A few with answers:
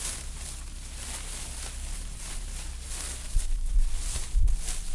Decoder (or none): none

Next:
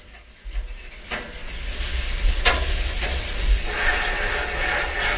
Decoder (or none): none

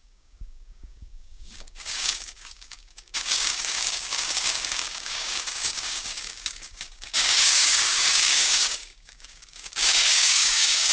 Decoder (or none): codec, DAC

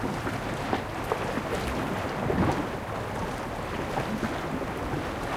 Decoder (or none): none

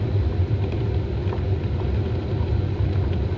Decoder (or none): none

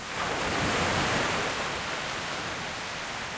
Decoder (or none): none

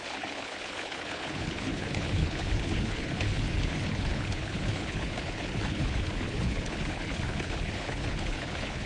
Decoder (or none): codec, HILCodec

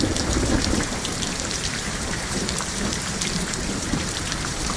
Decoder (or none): vocoder, BigVGAN v2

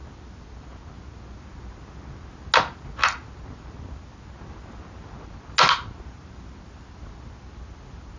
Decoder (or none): none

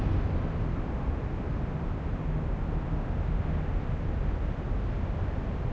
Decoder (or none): none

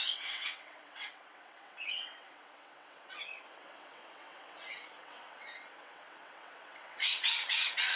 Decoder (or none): vocoder, WaveNeXt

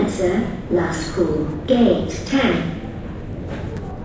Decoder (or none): none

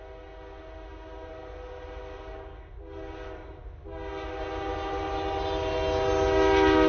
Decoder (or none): none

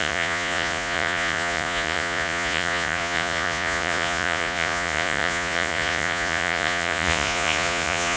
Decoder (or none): vocoder, Vocos